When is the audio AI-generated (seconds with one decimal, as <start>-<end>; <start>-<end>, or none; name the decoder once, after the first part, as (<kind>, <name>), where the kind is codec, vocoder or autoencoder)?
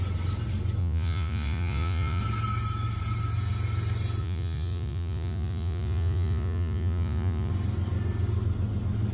0.8-2.2 (vocoder, Vocos); 4.2-7.5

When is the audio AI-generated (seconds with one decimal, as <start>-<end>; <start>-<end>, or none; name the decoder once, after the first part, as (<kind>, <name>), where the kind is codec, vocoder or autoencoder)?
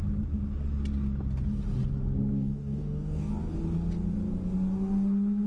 2.3-3.3 (codec, DAC)